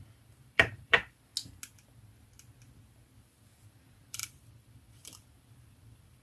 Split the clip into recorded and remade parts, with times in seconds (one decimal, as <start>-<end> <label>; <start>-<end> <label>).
0.0-1.3 remade; 1.3-3.2 recorded; 3.2-6.2 remade